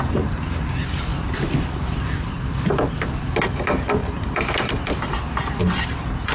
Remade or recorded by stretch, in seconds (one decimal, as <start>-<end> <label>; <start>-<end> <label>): 0.0-6.3 recorded